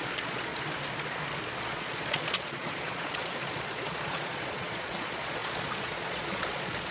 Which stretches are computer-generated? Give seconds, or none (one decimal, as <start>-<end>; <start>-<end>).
0.0-0.5; 1.6-6.9